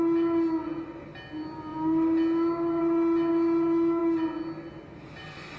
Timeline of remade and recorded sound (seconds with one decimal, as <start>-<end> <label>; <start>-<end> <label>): 0.0-5.6 recorded